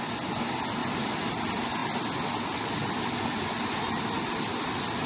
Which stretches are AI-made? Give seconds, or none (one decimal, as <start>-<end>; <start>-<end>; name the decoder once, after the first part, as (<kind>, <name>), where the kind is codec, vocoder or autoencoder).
0.8-1.4 (vocoder, BigVGAN v2)